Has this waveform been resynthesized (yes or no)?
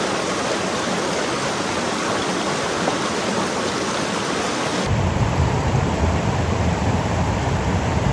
yes